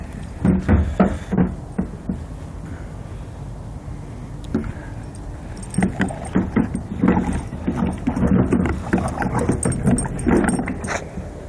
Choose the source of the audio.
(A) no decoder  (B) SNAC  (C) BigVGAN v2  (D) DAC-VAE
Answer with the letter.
A